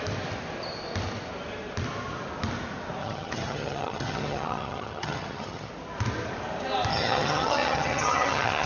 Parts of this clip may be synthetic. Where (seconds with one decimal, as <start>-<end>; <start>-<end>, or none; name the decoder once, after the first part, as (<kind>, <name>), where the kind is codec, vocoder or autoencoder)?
3.0-5.7 (vocoder, HiFi-GAN); 6.9-8.7